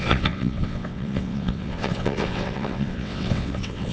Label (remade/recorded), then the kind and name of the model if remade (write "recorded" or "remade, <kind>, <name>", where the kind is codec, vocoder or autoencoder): remade, vocoder, WaveNeXt